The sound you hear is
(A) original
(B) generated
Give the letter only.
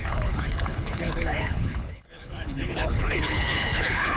B